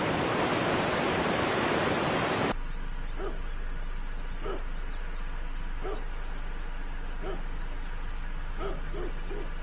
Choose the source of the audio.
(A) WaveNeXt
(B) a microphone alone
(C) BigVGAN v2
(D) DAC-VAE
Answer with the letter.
B